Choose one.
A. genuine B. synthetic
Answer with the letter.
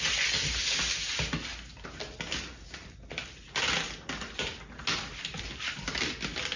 A